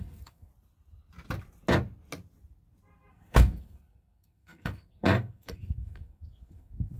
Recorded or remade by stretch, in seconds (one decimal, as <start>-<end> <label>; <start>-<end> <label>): 0.0-0.5 remade; 0.5-3.1 recorded; 3.1-7.0 remade